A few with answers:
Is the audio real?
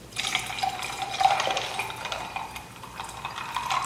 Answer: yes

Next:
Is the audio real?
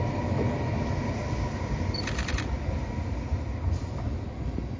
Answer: yes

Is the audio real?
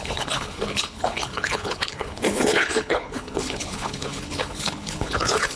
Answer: no